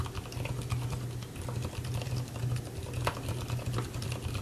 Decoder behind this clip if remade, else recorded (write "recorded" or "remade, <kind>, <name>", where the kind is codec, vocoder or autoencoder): recorded